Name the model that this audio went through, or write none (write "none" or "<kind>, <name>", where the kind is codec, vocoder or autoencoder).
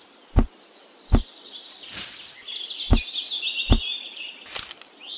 none